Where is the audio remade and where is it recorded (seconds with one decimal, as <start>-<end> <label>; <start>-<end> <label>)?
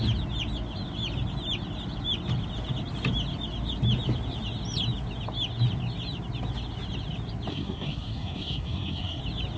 0.0-7.5 recorded; 7.5-9.2 remade; 9.2-9.6 recorded